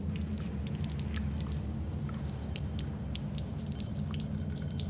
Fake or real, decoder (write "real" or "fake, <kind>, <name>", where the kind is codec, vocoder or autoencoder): real